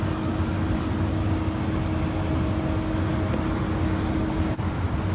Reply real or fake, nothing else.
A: real